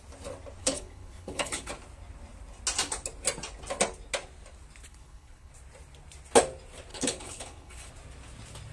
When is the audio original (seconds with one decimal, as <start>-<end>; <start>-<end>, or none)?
0.0-0.6; 1.7-4.9; 5.5-6.9; 7.9-8.7